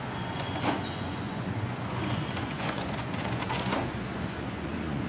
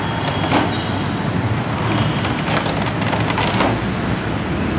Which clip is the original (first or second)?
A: second